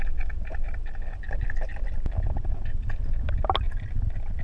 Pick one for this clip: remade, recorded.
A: recorded